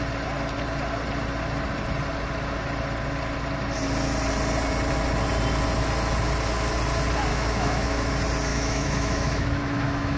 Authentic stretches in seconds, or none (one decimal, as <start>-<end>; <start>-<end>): 0.0-7.3; 8.1-8.5